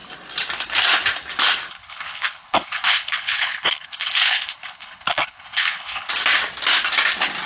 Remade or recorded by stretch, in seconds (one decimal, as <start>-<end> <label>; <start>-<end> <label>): 0.0-1.7 recorded; 1.7-6.1 remade; 6.1-7.5 recorded